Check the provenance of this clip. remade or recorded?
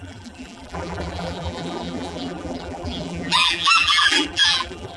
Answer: remade